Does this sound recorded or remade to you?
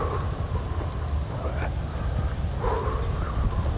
recorded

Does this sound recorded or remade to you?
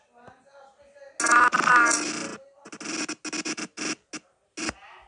recorded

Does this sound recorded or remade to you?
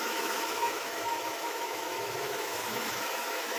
remade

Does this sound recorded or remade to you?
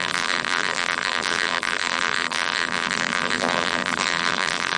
remade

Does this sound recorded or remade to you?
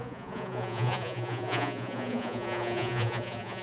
remade